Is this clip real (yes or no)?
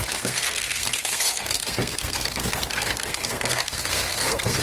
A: no